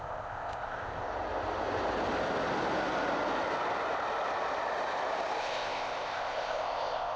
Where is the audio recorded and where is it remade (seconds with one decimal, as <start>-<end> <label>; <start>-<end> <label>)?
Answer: 0.0-1.1 remade; 1.1-5.4 recorded; 5.4-7.2 remade

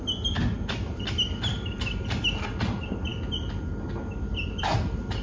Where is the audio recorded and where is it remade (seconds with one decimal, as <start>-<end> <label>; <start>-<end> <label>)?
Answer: 0.0-5.2 recorded

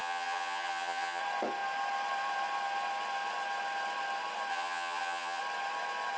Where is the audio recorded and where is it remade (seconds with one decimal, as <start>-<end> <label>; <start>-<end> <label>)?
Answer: 0.0-1.2 remade; 1.2-4.5 recorded; 4.5-5.4 remade; 5.4-6.2 recorded

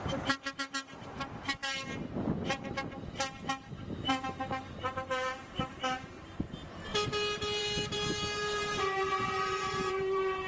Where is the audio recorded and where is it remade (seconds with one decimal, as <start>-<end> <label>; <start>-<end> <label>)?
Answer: 0.0-6.9 remade; 6.9-7.6 recorded; 7.6-10.5 remade

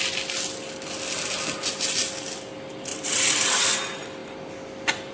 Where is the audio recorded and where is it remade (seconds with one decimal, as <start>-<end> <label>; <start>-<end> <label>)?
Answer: 0.0-2.9 recorded; 2.9-3.6 remade; 3.6-5.1 recorded